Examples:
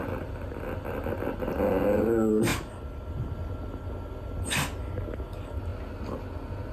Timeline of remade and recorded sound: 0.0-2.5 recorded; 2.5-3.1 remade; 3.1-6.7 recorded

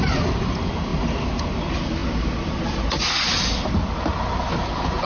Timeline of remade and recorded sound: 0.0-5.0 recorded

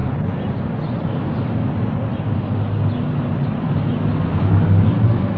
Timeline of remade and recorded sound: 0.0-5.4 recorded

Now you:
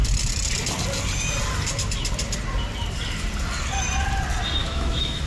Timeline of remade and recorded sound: 0.0-4.6 recorded; 4.6-5.3 remade

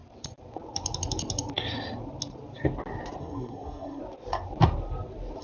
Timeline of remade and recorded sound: 0.0-3.2 recorded; 3.2-4.0 remade; 4.0-5.4 recorded